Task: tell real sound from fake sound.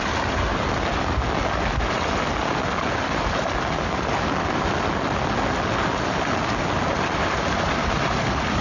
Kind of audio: real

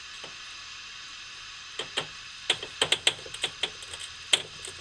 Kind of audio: real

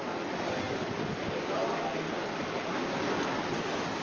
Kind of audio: real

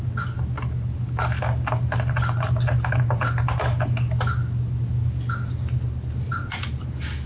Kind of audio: real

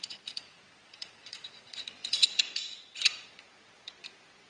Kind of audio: fake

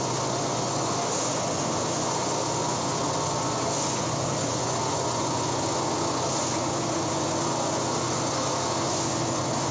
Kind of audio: fake